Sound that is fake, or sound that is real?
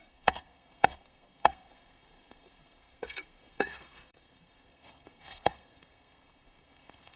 fake